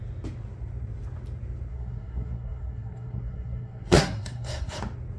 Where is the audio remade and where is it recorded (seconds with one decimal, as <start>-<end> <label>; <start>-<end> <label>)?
0.0-1.7 recorded; 1.7-4.8 remade; 4.8-5.2 recorded